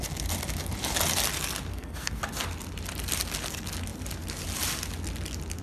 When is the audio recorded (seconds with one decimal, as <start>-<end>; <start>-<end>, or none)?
0.0-1.7; 2.2-5.6